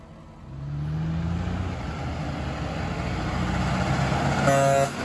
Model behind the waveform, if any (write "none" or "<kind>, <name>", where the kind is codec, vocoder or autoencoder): none